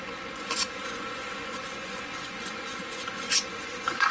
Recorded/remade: remade